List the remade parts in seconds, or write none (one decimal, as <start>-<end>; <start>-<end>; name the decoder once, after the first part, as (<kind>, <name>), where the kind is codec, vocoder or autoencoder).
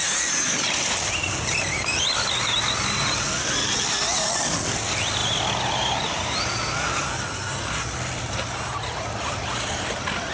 none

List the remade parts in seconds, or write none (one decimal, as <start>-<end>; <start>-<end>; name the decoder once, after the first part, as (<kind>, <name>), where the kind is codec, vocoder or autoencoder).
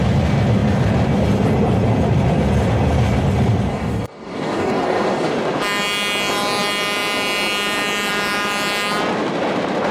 3.7-5.3 (codec, DAC)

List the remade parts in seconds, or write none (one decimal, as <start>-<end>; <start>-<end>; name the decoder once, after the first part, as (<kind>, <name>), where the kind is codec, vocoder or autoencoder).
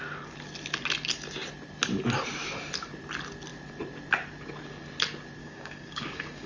5.4-6.5 (codec, DAC)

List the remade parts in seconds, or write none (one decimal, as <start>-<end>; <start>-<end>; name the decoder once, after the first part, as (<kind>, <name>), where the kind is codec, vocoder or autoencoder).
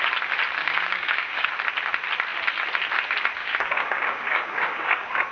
0.6-1.5 (codec, DAC); 3.4-5.3